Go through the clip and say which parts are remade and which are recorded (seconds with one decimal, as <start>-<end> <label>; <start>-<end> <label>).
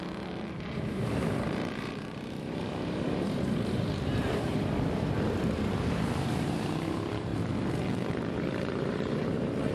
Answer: 0.0-4.5 remade; 4.5-5.4 recorded; 5.4-7.3 remade; 7.3-8.1 recorded; 8.1-9.7 remade